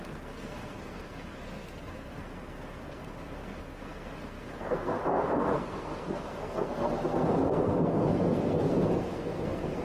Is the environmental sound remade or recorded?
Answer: remade